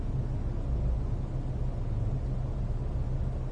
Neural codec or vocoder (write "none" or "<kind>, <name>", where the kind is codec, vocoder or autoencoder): none